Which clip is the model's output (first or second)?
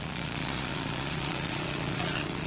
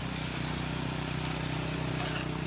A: first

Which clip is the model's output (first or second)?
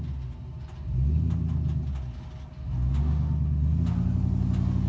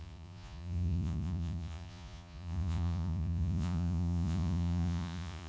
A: second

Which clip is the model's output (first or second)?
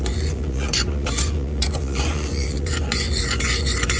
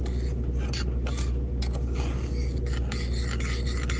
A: first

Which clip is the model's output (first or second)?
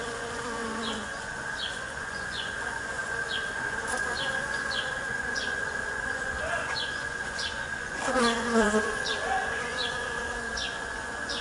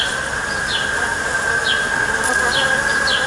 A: first